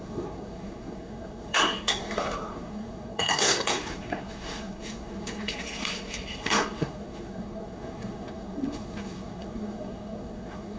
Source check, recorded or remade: remade